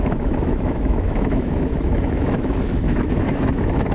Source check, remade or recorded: remade